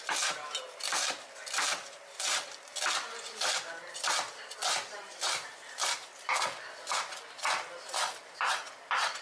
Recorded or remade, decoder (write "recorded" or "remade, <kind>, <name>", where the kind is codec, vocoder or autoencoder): recorded